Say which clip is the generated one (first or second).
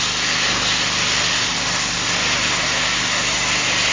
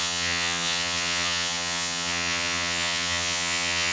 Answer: second